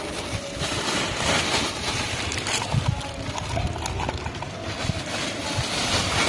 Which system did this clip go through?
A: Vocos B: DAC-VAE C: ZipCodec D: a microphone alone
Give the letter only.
D